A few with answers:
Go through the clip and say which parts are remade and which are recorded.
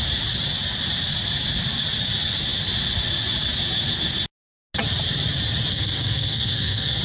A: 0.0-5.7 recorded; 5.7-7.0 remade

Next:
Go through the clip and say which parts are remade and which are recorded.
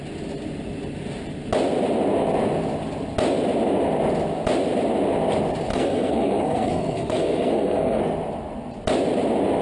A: 0.0-5.7 recorded; 5.7-8.0 remade; 8.0-9.6 recorded